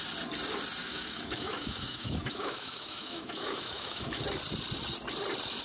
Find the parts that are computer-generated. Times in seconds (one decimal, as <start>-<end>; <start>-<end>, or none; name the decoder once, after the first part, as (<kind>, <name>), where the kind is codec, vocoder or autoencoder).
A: 0.8-4.2 (autoencoder, DAC-VAE)

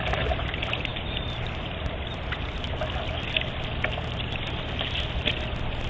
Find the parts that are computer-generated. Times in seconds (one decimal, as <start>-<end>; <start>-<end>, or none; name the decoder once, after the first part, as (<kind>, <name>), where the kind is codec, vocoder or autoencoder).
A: none

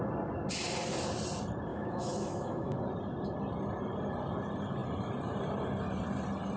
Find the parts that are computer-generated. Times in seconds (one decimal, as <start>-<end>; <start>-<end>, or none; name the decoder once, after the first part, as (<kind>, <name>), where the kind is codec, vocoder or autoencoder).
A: 1.7-2.8 (autoencoder, DAC-VAE)

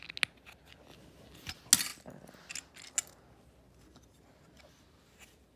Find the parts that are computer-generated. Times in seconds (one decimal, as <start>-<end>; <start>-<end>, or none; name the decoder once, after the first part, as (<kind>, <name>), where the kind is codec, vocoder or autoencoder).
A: none

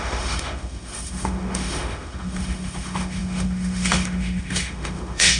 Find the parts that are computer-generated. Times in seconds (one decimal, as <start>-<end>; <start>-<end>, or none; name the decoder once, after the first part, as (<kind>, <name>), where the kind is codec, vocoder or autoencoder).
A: 0.0-5.4 (autoencoder, DAC-VAE)

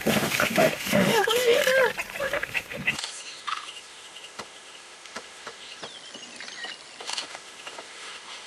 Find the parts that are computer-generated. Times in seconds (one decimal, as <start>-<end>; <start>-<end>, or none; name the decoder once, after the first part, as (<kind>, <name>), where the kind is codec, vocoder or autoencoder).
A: 0.0-1.6 (autoencoder, DAC-VAE); 2.2-5.8; 7.0-8.5

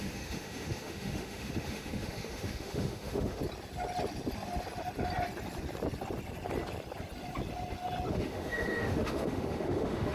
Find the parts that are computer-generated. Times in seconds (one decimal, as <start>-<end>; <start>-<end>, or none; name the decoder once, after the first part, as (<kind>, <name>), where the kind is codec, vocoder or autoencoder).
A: 0.0-3.4 (autoencoder, DAC-VAE); 8.1-10.1